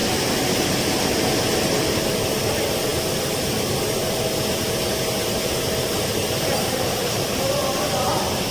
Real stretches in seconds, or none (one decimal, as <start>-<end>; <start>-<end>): 0.0-8.5